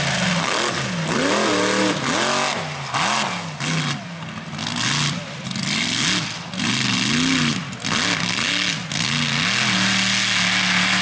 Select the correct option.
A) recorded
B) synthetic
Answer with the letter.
A